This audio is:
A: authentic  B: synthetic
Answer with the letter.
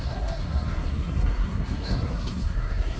B